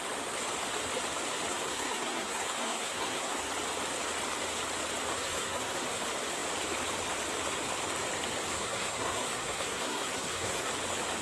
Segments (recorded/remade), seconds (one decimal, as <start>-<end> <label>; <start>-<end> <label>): 0.0-1.5 recorded; 1.5-3.5 remade; 3.5-5.1 recorded; 5.1-6.0 remade; 6.0-8.5 recorded; 8.5-10.7 remade; 10.7-11.2 recorded